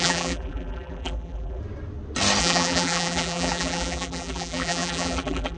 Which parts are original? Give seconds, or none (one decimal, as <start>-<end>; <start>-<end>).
1.6-2.4